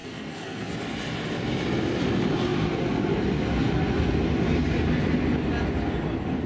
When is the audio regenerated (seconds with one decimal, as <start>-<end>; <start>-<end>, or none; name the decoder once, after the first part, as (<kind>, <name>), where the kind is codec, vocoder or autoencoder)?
0.0-0.7 (codec, SNAC)